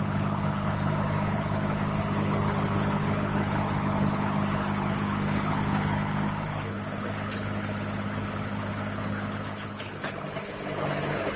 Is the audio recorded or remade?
remade